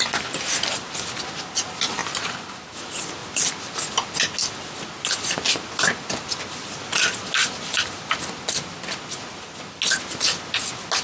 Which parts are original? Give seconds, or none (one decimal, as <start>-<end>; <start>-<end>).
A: 0.0-11.0